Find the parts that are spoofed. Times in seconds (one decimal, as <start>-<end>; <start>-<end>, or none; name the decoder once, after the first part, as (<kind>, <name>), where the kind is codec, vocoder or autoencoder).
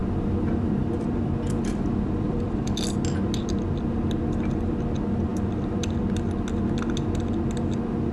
0.0-2.6 (vocoder, BigVGAN v2)